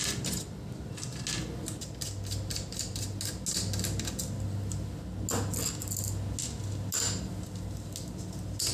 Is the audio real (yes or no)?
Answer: yes